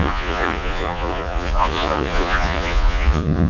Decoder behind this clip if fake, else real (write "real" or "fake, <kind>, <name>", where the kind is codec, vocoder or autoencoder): fake, vocoder, Vocos